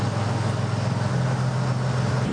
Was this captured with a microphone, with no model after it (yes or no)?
yes